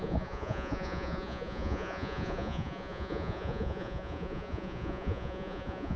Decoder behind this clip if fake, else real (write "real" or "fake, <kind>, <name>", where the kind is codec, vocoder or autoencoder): fake, vocoder, Vocos